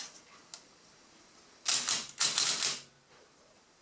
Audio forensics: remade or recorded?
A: recorded